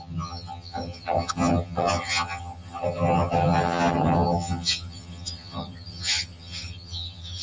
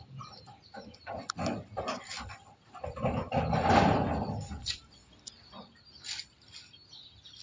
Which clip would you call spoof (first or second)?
first